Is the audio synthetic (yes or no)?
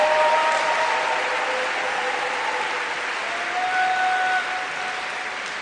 no